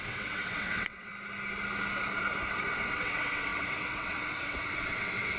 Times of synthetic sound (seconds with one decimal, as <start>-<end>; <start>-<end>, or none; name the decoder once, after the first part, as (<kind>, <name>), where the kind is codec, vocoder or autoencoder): 0.0-1.1 (vocoder, WaveNeXt); 2.7-5.4